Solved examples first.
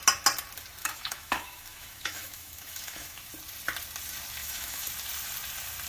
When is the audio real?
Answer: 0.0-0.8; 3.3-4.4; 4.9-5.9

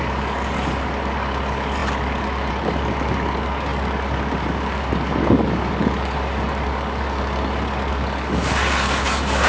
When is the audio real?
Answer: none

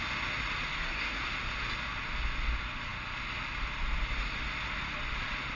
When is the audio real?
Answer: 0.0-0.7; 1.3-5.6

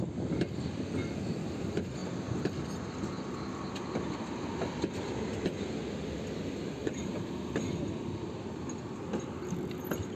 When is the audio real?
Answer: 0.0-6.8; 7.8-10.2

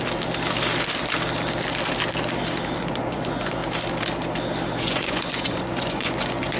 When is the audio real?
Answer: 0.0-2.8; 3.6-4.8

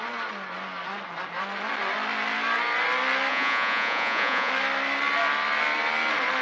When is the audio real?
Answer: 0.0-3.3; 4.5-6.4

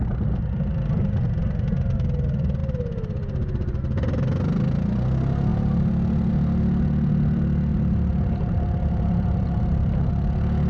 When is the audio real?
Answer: 0.0-7.7; 10.1-10.7

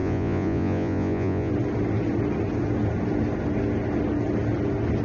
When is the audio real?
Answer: 1.5-5.0